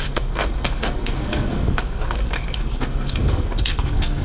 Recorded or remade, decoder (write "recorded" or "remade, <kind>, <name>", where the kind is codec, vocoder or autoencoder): remade, codec, SNAC